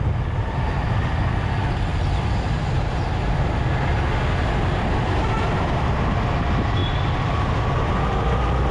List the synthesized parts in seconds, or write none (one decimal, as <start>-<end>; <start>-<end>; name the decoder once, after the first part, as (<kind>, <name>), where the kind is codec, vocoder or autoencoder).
none